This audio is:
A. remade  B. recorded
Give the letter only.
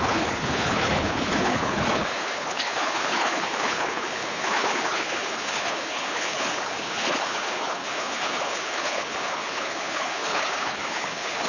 A